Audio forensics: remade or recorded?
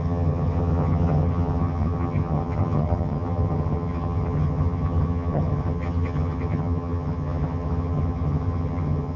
remade